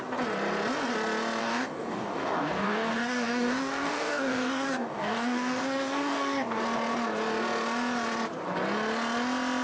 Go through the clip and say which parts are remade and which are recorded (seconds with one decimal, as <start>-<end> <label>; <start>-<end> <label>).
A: 0.0-1.4 recorded; 1.4-6.6 remade; 6.6-9.6 recorded